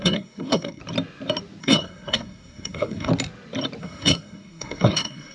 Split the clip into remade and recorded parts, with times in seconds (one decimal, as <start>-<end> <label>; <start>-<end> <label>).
0.0-0.8 remade; 0.8-1.6 recorded; 1.6-3.1 remade; 3.1-3.8 recorded; 3.8-5.3 remade